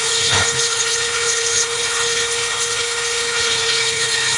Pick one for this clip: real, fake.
fake